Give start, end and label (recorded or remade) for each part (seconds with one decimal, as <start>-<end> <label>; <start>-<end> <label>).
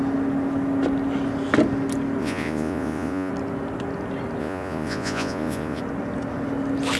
0.0-2.2 recorded; 2.2-3.3 remade; 3.3-4.4 recorded; 4.4-5.8 remade; 5.8-7.0 recorded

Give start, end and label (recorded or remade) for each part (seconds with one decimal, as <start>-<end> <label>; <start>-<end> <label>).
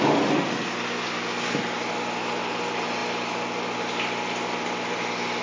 0.0-5.4 recorded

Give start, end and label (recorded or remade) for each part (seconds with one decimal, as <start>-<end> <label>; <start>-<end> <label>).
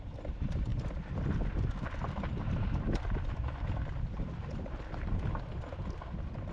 0.0-6.5 recorded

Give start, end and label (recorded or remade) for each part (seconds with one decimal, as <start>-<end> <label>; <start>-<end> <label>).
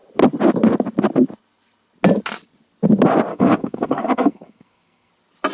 0.0-3.3 recorded; 3.3-5.1 remade; 5.1-5.5 recorded